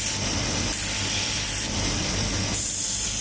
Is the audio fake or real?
fake